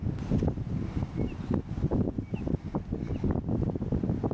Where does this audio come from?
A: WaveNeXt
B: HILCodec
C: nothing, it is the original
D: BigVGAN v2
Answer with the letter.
C